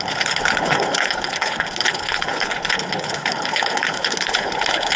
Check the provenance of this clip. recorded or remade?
remade